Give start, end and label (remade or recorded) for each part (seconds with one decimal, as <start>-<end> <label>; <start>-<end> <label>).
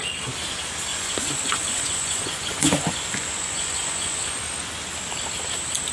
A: 0.0-0.9 recorded; 0.9-4.4 remade; 4.4-5.9 recorded